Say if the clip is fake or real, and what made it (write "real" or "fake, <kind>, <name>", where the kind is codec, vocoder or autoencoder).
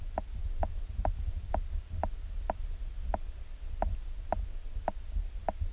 real